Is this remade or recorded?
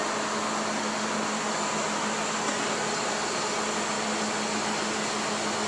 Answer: recorded